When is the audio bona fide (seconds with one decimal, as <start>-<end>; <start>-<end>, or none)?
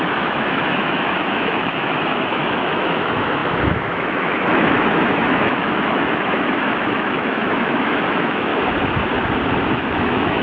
8.5-9.7